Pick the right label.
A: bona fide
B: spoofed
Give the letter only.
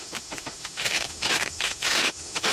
B